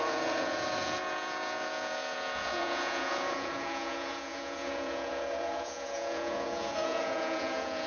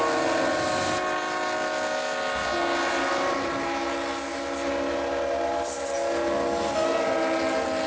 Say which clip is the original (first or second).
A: second